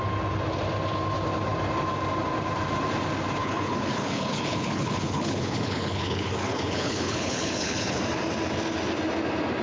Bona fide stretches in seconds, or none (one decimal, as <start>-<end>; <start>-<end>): 0.0-3.4; 8.0-9.6